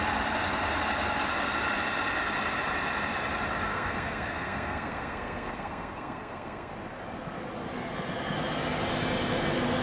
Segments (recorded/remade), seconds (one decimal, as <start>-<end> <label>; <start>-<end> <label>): 0.0-3.7 recorded; 3.7-6.7 remade; 6.7-9.8 recorded